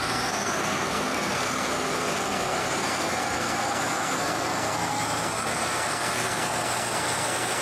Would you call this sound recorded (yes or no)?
no